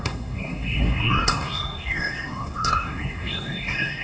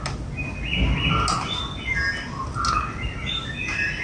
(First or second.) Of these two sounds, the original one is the second